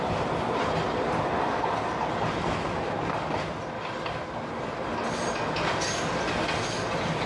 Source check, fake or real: real